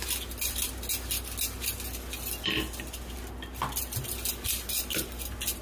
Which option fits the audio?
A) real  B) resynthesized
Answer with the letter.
A